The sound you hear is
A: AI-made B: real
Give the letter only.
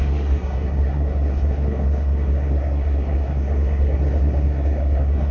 A